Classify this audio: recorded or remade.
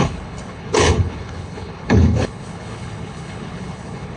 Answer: remade